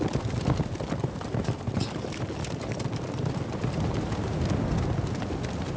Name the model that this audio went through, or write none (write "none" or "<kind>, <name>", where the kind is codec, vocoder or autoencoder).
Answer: none